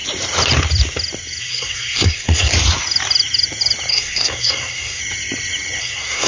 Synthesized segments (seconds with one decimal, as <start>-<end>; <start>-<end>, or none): 1.4-2.5; 3.9-5.0; 5.8-6.3